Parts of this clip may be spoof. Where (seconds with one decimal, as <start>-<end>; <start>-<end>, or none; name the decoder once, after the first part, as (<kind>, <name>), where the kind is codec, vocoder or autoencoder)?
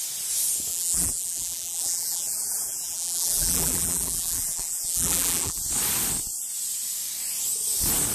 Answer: 0.7-5.6 (vocoder, BigVGAN v2)